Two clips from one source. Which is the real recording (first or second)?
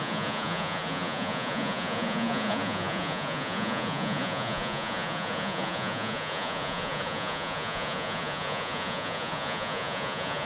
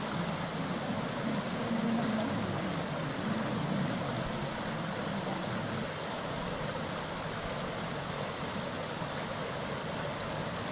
second